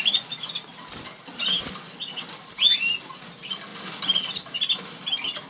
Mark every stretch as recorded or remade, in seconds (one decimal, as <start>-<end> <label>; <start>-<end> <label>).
0.0-5.5 recorded